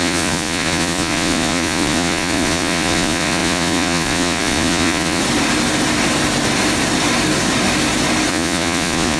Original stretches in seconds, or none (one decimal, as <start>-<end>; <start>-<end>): 5.2-8.3